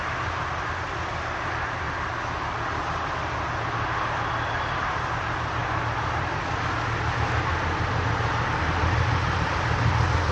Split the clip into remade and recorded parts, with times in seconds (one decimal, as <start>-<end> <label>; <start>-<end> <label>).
0.0-10.3 recorded